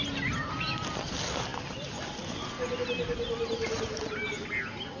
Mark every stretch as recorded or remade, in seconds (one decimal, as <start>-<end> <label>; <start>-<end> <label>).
0.0-5.0 recorded